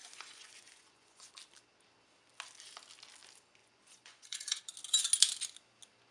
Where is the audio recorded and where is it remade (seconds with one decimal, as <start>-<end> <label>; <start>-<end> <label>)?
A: 0.0-1.3 remade; 1.3-3.6 recorded; 3.6-4.6 remade; 4.6-6.1 recorded